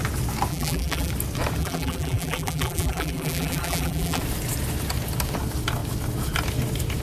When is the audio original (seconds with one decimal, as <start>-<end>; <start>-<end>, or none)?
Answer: 0.0-0.5; 1.1-1.6; 4.2-7.0